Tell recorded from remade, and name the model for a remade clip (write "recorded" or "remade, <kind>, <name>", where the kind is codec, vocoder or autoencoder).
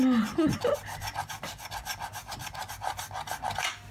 recorded